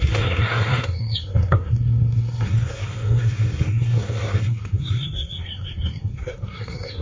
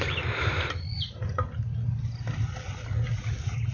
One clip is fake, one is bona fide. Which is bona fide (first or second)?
second